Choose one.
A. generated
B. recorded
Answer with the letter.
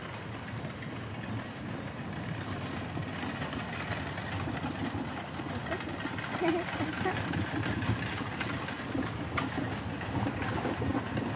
B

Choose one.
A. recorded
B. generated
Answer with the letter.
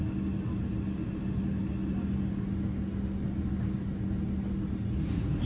A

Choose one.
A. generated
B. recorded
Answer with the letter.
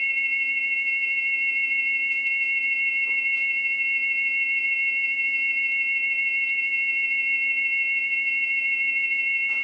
B